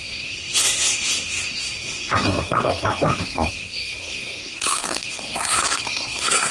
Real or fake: fake